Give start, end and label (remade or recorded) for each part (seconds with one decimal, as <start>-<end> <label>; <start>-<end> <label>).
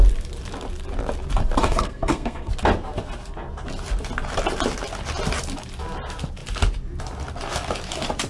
0.0-1.6 recorded; 1.6-2.5 remade; 2.5-8.3 recorded